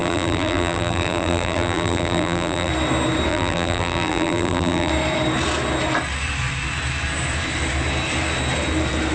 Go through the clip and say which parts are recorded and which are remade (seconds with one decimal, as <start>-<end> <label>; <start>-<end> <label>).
0.0-2.7 remade; 2.7-3.3 recorded; 3.3-4.9 remade; 4.9-9.1 recorded